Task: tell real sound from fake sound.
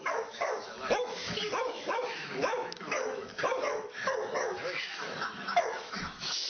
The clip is fake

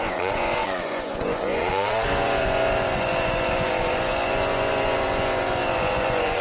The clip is fake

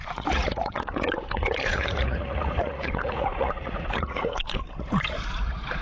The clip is fake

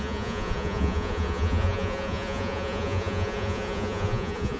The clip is fake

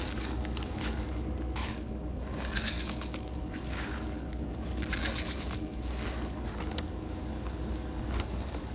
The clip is fake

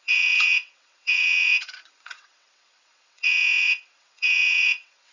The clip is fake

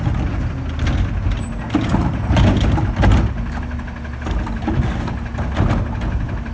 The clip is real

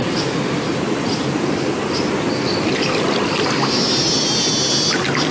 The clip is real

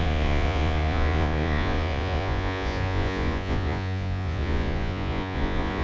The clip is fake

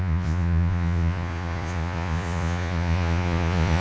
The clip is fake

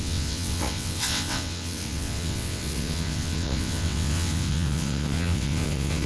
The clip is fake